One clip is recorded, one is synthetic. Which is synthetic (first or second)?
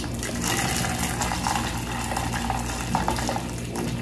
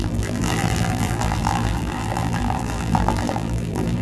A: second